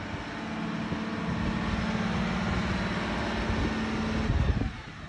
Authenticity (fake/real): real